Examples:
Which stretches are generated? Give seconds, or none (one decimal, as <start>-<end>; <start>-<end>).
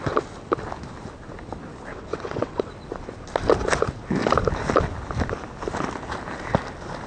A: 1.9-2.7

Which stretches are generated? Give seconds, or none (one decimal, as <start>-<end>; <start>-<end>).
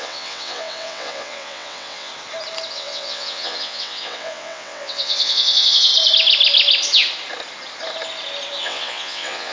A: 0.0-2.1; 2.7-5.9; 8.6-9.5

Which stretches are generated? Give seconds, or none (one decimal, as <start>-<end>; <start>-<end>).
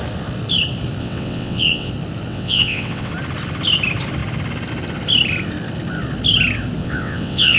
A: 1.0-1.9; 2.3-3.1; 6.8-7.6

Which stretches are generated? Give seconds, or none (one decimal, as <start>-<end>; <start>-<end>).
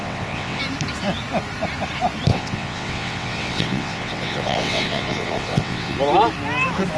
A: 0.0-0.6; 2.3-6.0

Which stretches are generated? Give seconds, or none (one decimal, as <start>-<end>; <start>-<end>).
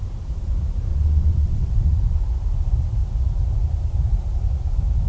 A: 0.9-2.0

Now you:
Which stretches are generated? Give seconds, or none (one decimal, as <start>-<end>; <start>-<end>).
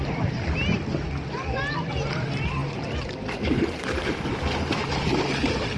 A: none